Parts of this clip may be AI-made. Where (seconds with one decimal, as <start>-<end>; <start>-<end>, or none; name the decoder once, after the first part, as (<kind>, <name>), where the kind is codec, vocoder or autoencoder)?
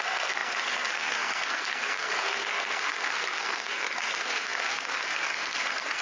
0.0-6.0 (codec, SNAC)